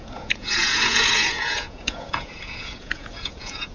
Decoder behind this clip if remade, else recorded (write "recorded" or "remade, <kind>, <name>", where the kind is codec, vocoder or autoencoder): remade, vocoder, Vocos